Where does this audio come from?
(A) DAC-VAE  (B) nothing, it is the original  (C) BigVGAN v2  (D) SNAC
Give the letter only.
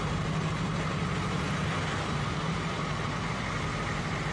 C